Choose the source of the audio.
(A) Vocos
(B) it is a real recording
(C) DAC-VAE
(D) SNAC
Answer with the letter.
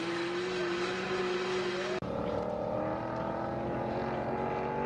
B